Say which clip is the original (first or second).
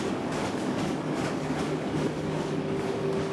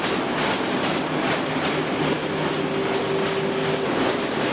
second